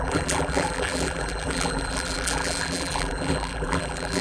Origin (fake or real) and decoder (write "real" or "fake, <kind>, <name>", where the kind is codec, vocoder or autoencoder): fake, vocoder, BigVGAN v2